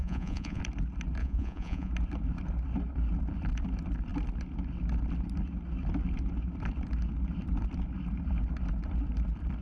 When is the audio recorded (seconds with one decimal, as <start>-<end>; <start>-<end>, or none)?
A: 0.6-1.2; 1.9-9.6